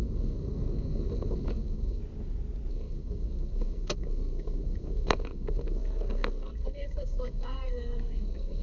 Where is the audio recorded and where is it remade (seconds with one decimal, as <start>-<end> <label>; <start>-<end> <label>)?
0.0-2.0 remade; 2.0-2.7 recorded; 2.7-8.6 remade